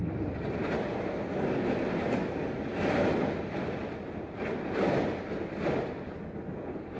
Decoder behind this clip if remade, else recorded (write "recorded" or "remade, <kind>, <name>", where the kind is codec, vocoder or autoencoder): recorded